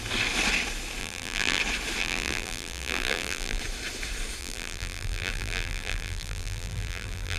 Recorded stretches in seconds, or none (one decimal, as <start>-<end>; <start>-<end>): 0.0-1.0; 1.6-2.0; 3.6-4.4